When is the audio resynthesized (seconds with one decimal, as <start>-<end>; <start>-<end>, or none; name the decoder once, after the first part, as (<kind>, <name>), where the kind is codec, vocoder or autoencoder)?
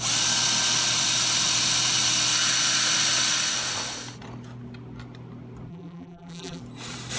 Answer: 5.7-6.6 (vocoder, BigVGAN v2)